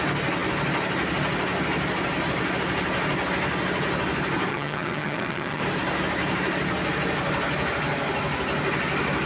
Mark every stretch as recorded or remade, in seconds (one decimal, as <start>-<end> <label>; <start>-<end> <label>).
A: 0.0-4.5 recorded; 4.5-5.6 remade; 5.6-9.3 recorded